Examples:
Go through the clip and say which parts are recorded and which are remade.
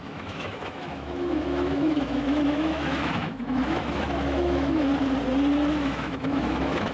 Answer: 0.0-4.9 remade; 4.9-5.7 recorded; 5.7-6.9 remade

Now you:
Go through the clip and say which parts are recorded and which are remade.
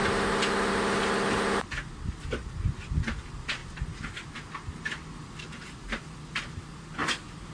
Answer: 0.0-7.0 recorded; 7.0-7.5 remade